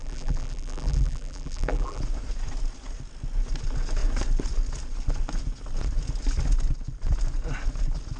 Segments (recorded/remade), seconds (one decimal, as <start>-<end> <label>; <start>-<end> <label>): 0.0-2.0 remade; 2.0-8.2 recorded